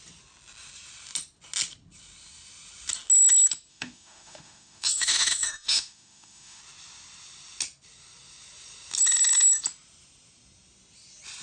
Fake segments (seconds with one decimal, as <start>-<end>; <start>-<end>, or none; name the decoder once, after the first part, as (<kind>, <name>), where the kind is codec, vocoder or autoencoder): 3.7-6.6 (autoencoder, DAC-VAE)